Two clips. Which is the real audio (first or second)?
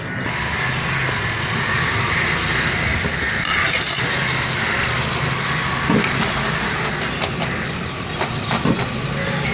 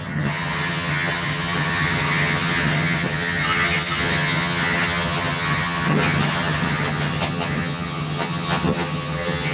first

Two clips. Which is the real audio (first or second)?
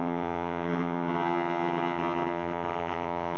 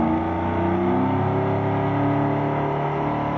second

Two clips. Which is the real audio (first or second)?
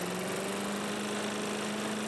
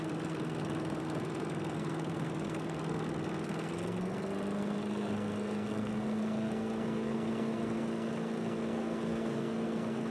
first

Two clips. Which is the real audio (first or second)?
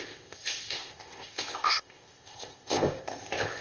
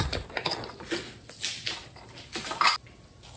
second